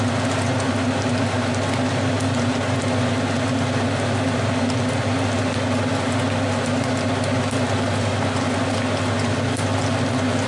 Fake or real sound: real